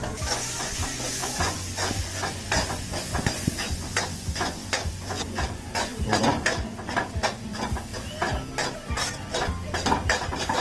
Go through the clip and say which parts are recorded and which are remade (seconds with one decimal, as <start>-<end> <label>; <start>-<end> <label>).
0.0-7.9 remade; 7.9-10.6 recorded